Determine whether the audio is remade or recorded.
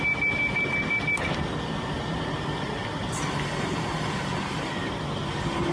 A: recorded